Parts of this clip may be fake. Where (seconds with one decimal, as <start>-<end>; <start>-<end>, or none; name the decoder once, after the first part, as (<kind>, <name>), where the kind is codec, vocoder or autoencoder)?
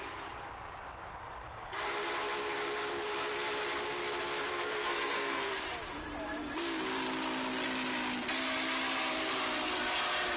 4.5-5.5 (codec, SNAC)